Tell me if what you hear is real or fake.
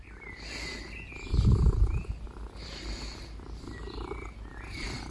real